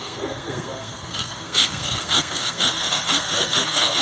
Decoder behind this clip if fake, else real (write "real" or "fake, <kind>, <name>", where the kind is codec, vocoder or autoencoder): fake, codec, SNAC